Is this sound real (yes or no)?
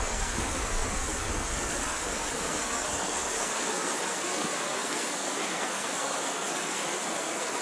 no